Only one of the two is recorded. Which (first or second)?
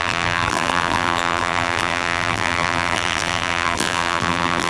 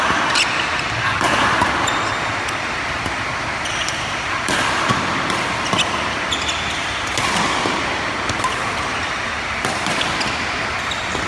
second